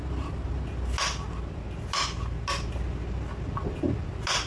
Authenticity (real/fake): real